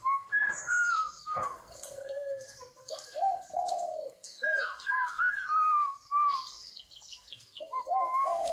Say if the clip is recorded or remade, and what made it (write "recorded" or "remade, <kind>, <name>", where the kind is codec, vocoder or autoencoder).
remade, codec, SNAC